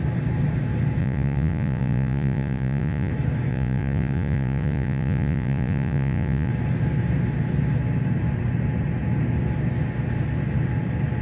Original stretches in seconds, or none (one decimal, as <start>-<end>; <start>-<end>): 0.0-1.0; 3.1-3.5; 6.5-11.2